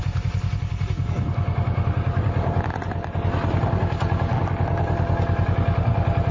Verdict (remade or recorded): recorded